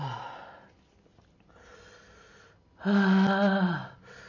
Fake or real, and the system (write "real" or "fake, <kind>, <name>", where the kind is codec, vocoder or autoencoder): real